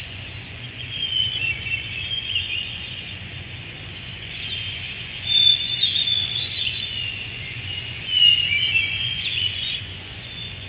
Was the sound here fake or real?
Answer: fake